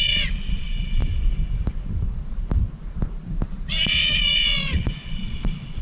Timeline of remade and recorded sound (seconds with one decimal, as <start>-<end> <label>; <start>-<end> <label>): 0.0-1.0 remade; 1.0-3.5 recorded; 3.5-5.8 remade